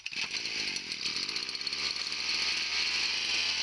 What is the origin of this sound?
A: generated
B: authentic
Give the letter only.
B